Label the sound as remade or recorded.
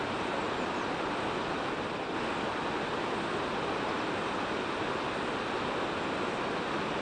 recorded